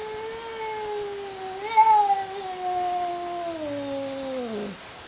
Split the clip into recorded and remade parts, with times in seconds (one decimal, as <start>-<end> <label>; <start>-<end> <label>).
0.0-5.1 recorded